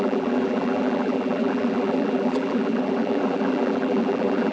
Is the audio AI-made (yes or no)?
yes